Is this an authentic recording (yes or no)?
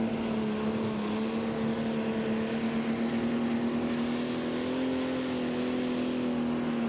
yes